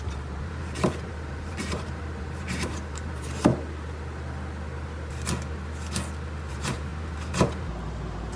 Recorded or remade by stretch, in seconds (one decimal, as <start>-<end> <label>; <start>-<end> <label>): 0.0-3.5 remade; 3.5-6.5 recorded; 6.5-8.4 remade